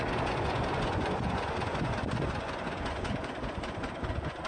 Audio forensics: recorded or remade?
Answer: remade